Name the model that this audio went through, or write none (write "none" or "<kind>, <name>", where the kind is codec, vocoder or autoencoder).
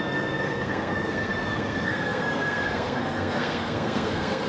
codec, SNAC